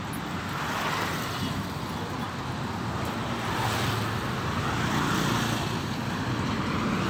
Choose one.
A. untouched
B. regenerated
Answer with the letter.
A